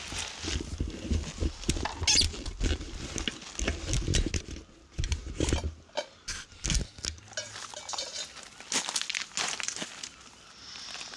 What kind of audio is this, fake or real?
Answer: real